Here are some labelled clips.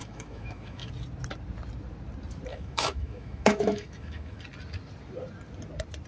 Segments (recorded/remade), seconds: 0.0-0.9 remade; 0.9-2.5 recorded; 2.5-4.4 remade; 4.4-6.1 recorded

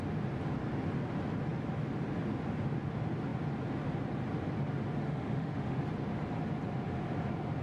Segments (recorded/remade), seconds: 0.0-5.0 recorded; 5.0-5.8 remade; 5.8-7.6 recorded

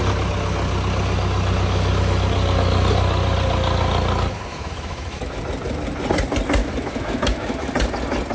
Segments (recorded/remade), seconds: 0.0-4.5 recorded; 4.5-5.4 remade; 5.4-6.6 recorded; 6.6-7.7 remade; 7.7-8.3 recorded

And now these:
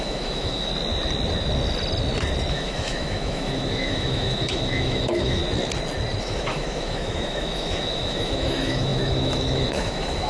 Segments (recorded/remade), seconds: 0.0-0.7 remade; 0.7-2.5 recorded; 2.5-5.4 remade; 5.4-6.2 recorded; 6.2-10.3 remade

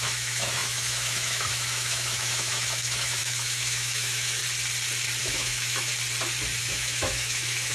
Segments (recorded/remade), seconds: 0.0-4.4 remade; 4.4-5.2 recorded; 5.2-5.9 remade; 5.9-6.6 recorded; 6.6-7.7 remade

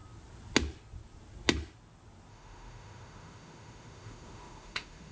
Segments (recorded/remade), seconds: 0.0-2.3 recorded; 2.3-5.1 remade

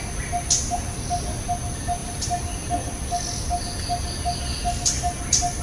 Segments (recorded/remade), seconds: 0.0-5.6 recorded